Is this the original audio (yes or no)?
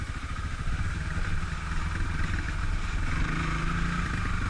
yes